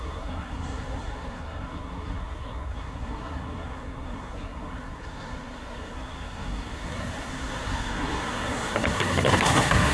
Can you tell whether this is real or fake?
fake